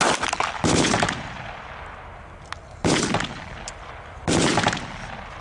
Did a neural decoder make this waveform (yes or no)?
no